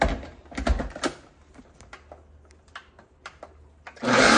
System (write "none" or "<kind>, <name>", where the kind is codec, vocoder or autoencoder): none